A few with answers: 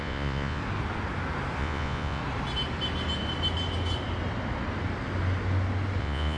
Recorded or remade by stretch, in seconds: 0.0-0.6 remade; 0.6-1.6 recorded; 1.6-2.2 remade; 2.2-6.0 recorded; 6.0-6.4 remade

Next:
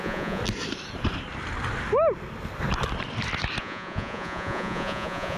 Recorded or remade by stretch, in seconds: 0.0-0.4 remade; 0.4-3.6 recorded; 3.6-5.4 remade

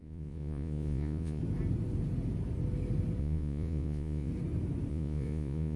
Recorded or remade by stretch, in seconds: 0.0-1.4 remade; 1.4-3.2 recorded; 3.2-4.3 remade; 4.3-4.9 recorded; 4.9-5.8 remade